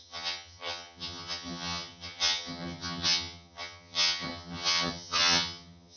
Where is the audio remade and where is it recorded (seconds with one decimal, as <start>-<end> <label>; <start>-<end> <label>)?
0.0-6.0 remade

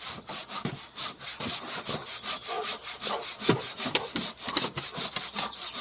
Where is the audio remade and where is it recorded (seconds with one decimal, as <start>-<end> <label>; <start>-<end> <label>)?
0.0-5.8 recorded

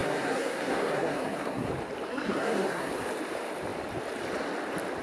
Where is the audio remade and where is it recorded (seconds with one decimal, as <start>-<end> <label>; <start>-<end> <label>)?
0.0-1.7 remade; 1.7-2.1 recorded; 2.1-2.9 remade; 2.9-5.0 recorded

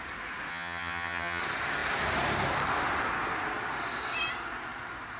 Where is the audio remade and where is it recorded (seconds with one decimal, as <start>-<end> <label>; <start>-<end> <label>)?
0.0-0.5 recorded; 0.5-1.4 remade; 1.4-5.2 recorded

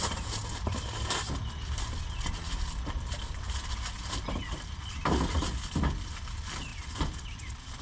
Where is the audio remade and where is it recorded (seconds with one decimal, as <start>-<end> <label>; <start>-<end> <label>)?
0.0-7.8 recorded

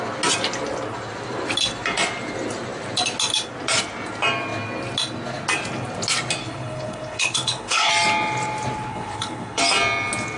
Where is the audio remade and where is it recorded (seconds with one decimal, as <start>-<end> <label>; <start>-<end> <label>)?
0.0-6.4 recorded; 6.4-7.9 remade; 7.9-8.9 recorded; 8.9-9.6 remade; 9.6-10.4 recorded

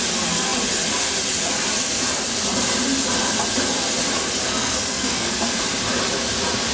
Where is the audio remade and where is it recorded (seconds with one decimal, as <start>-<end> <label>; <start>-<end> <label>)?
0.0-4.4 recorded; 4.4-5.6 remade; 5.6-6.7 recorded

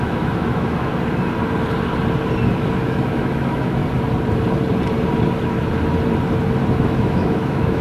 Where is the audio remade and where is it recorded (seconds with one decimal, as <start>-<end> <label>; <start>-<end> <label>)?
0.0-0.9 remade; 0.9-2.8 recorded; 2.8-3.8 remade; 3.8-6.7 recorded; 6.7-7.8 remade